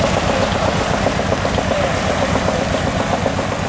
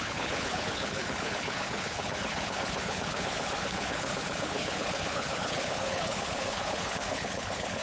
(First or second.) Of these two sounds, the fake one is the second